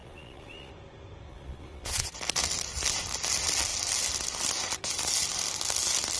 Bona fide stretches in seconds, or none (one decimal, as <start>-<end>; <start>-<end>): 0.7-1.3; 2.1-6.2